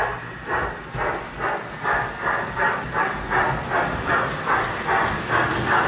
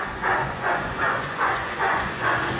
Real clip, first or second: first